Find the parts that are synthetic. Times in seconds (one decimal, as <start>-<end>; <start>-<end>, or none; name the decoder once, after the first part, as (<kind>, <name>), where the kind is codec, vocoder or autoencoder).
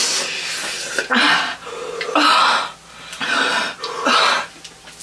none